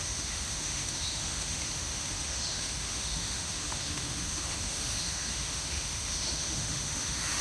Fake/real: fake